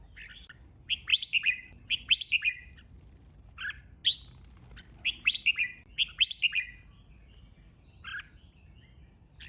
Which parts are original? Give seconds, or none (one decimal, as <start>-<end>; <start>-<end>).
0.0-1.1; 2.9-9.5

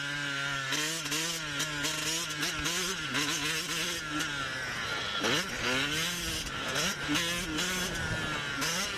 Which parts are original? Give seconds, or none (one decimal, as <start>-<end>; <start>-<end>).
0.0-9.0